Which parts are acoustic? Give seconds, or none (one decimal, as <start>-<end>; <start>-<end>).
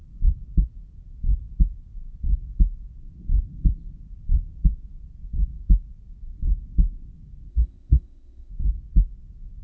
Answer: 0.0-7.5; 8.5-9.6